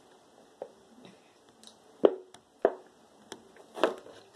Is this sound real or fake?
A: real